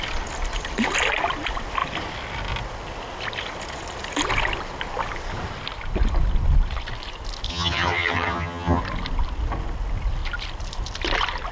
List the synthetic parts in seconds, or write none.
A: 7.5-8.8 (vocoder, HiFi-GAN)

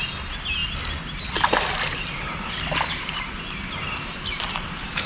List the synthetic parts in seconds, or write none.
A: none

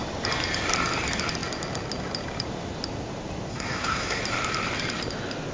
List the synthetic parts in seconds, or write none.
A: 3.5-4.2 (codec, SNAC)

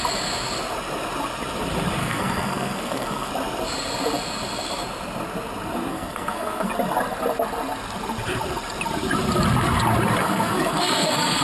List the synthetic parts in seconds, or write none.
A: 2.0-3.3 (codec, SNAC); 5.9-6.7; 10.2-11.4